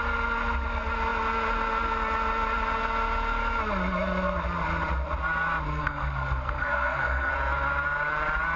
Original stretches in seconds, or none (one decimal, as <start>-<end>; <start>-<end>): 0.0-5.7; 7.3-8.6

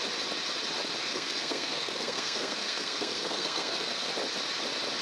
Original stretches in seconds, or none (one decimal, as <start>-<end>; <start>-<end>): 0.0-1.1; 4.1-5.0

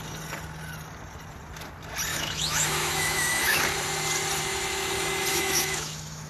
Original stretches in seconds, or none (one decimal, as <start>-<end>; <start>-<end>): 0.0-2.1; 3.6-5.3

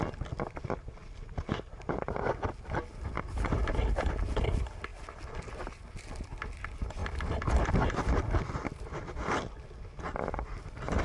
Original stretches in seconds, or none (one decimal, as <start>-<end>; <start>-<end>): 0.0-7.0; 7.7-11.0